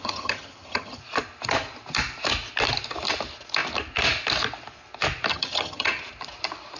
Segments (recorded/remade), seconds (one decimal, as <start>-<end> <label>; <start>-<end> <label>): 0.0-1.0 remade; 1.0-5.3 recorded; 5.3-6.0 remade; 6.0-6.8 recorded